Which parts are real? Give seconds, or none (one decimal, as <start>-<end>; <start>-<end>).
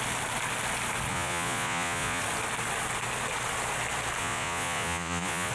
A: 0.0-1.1; 2.2-4.2